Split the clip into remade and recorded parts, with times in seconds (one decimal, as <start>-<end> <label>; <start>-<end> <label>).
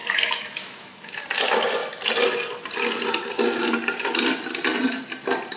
0.0-1.2 remade; 1.2-5.6 recorded